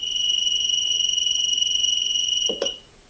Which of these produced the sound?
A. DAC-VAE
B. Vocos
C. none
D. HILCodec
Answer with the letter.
B